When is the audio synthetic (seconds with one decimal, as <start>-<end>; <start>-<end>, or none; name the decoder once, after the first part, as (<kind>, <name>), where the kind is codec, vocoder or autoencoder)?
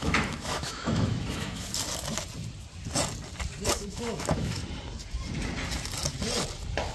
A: 0.0-1.7 (autoencoder, DAC-VAE); 3.7-4.6